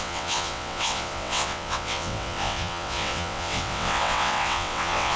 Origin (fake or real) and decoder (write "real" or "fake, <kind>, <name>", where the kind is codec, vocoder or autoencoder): fake, vocoder, WaveNeXt